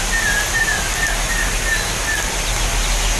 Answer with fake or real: real